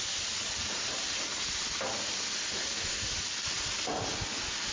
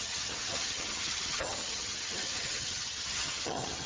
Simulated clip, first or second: second